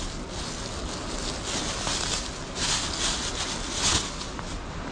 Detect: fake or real real